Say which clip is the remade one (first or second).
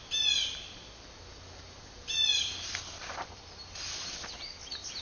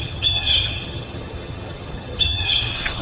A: second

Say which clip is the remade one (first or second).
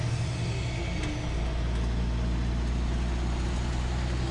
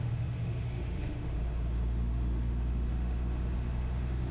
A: second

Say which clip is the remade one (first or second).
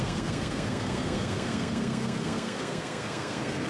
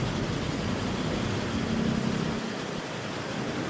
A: first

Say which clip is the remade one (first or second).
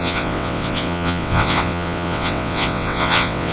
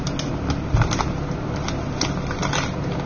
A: first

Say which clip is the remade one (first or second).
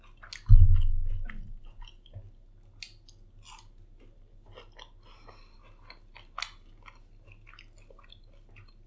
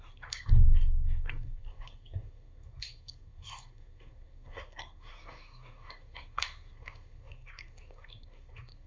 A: second